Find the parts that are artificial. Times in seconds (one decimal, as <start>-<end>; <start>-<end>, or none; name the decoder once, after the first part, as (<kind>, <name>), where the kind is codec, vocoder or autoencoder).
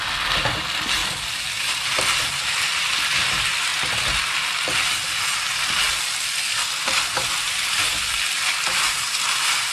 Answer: none